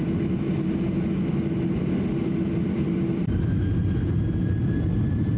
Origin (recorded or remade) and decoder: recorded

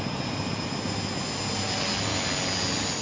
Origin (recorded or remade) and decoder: recorded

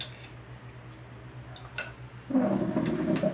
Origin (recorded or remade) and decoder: recorded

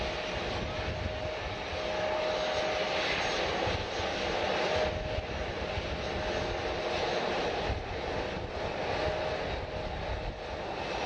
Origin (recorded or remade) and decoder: recorded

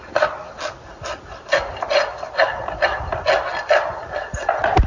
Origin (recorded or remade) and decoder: recorded